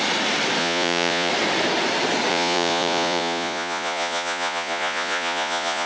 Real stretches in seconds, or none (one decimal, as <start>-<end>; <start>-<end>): 0.0-0.6; 1.3-2.3